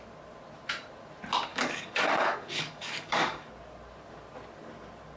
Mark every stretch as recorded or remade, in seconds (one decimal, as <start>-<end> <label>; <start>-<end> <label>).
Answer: 0.0-1.5 recorded; 1.5-3.5 remade; 3.5-5.2 recorded